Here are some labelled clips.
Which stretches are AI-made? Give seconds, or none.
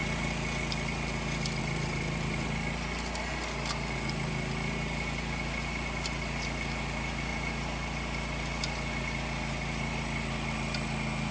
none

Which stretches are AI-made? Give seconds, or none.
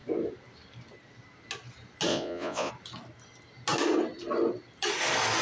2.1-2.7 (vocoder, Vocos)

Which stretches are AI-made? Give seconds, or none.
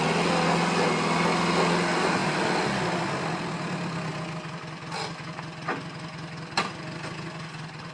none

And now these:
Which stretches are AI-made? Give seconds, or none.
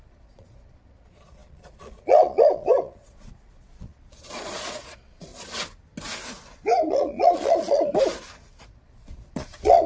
0.0-5.3 (vocoder, Vocos); 6.9-7.9; 8.6-9.9